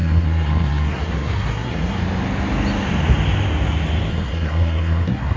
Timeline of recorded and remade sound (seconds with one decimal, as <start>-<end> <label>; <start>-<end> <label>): 0.0-2.0 remade; 2.0-4.1 recorded; 4.1-5.4 remade